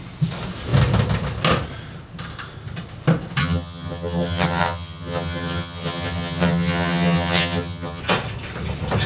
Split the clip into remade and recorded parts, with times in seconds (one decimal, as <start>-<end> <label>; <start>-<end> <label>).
0.0-3.4 recorded; 3.4-8.0 remade; 8.0-9.1 recorded